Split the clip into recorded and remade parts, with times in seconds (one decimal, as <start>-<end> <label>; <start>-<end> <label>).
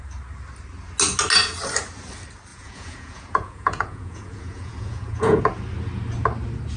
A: 0.0-2.5 recorded; 2.5-5.4 remade; 5.4-6.8 recorded